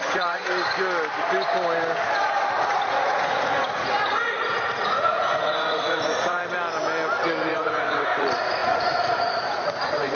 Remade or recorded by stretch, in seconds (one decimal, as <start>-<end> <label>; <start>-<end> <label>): 0.0-0.4 remade; 0.4-2.6 recorded; 2.6-6.4 remade; 6.4-7.5 recorded; 7.5-10.1 remade